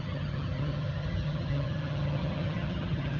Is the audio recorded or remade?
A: remade